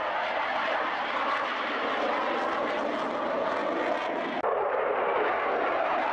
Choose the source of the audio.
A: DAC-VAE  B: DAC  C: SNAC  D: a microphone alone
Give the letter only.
D